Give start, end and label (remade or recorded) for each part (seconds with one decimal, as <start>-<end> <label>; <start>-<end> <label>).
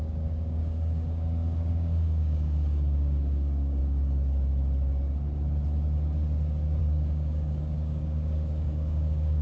0.0-3.8 remade; 3.8-6.8 recorded; 6.8-9.4 remade